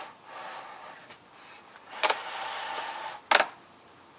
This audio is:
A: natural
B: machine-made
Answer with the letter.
A